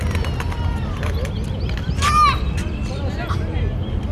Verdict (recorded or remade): recorded